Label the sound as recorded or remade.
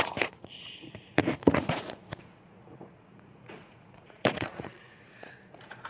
remade